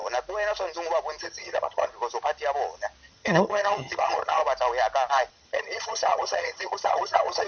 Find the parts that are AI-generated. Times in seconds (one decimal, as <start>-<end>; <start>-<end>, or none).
1.2-1.9; 3.1-4.4; 5.3-7.5